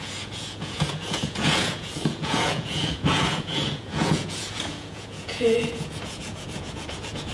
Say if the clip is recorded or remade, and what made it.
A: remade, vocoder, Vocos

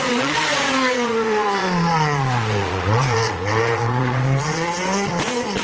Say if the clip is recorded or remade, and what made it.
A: remade, vocoder, Vocos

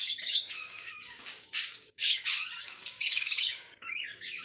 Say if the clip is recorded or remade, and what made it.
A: remade, codec, DAC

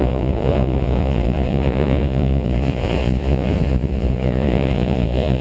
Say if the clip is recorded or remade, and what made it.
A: remade, vocoder, Vocos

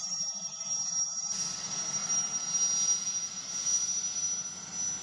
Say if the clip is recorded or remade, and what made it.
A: recorded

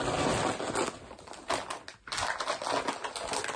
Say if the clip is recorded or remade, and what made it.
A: recorded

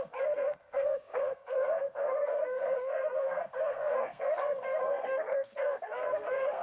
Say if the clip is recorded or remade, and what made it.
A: remade, codec, SNAC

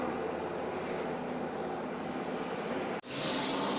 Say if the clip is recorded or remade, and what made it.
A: recorded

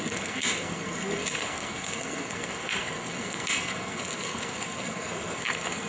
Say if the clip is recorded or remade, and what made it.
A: remade, codec, SNAC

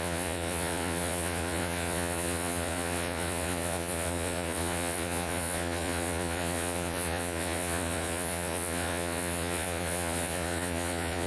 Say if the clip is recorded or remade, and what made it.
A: remade, vocoder, Vocos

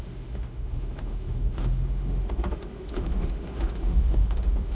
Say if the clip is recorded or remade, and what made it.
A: remade, autoencoder, DAC-VAE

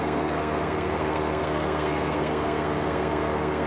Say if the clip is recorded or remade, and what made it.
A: remade, codec, SNAC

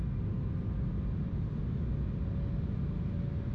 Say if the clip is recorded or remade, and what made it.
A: recorded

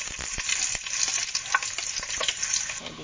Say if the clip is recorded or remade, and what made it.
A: recorded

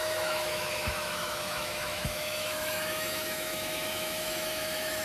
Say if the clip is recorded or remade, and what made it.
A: remade, autoencoder, DAC-VAE